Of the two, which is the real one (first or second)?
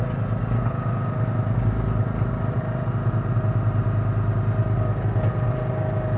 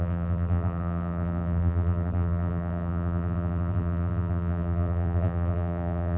first